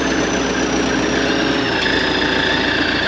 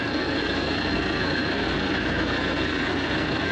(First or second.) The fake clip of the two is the second